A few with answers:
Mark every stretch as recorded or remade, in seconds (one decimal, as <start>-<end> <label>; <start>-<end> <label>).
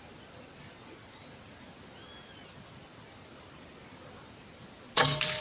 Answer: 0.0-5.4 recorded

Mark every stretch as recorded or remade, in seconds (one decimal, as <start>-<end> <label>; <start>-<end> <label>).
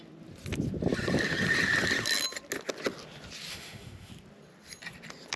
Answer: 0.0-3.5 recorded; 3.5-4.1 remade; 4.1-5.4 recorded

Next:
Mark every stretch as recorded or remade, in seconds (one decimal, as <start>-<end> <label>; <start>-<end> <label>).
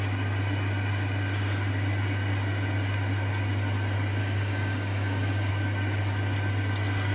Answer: 0.0-4.2 recorded; 4.2-5.5 remade; 5.5-7.1 recorded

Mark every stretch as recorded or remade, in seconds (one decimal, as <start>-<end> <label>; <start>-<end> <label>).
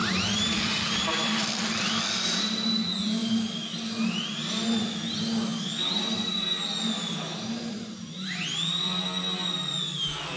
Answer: 0.0-1.5 remade; 1.5-10.4 recorded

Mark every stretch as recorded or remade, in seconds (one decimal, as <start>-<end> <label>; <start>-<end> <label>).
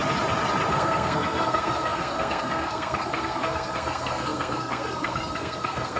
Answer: 0.0-0.7 recorded; 0.7-6.0 remade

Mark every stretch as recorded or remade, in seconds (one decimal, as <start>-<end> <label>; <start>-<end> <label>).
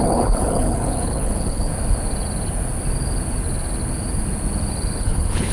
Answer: 0.0-1.7 remade; 1.7-5.0 recorded; 5.0-5.5 remade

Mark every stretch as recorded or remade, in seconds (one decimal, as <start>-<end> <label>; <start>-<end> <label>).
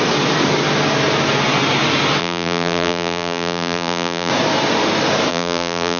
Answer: 0.0-2.2 recorded; 2.2-4.3 remade; 4.3-5.3 recorded; 5.3-6.0 remade